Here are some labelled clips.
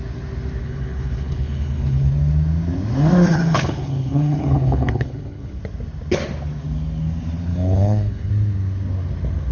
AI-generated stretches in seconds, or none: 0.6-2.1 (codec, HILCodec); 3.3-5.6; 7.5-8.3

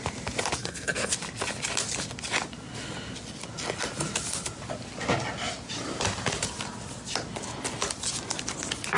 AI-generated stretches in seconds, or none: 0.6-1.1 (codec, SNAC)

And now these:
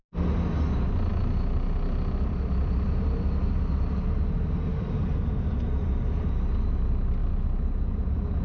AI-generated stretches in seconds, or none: none

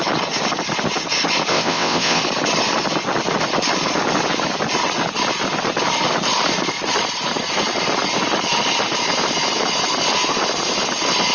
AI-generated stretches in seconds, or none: 1.5-2.2 (vocoder, WaveNeXt)

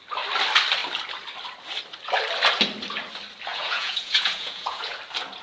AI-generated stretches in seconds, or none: 3.5-5.0 (vocoder, Vocos)